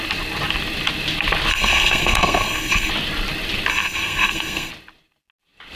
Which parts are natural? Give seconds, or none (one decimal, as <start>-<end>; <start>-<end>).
0.0-1.5; 2.9-3.7; 4.7-5.8